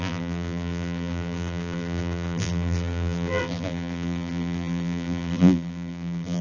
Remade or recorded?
remade